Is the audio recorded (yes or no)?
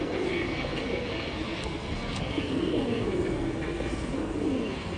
no